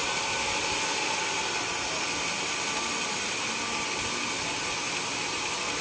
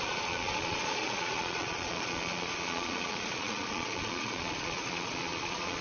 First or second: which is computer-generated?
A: second